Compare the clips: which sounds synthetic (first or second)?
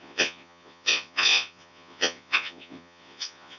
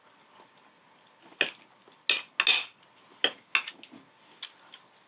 first